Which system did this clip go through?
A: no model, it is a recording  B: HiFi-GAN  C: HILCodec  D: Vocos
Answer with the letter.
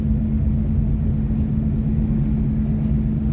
A